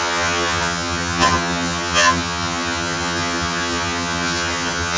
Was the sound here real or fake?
fake